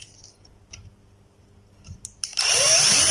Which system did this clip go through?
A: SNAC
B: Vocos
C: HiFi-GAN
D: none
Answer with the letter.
D